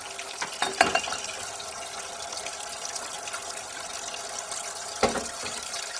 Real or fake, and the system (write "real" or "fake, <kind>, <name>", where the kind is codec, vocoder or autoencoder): real